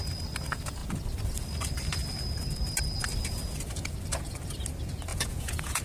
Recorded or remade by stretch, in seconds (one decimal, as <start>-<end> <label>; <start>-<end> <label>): 0.0-5.1 recorded; 5.1-5.8 remade